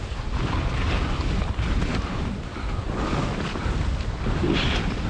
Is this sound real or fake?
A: real